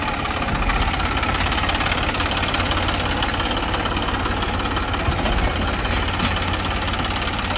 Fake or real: real